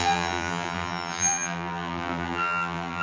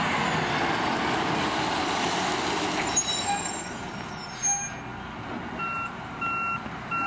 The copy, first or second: first